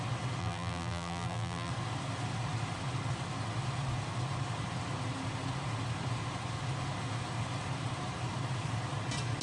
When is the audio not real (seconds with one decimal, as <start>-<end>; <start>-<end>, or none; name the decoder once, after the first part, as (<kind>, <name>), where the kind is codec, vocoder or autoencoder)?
0.4-1.7 (vocoder, BigVGAN v2)